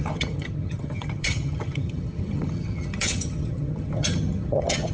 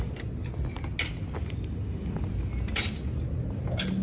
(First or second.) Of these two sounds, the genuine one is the second